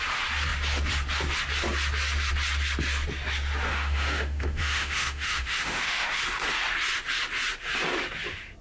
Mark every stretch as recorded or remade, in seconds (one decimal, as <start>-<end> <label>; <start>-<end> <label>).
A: 0.0-3.7 recorded; 3.7-6.2 remade; 6.2-8.6 recorded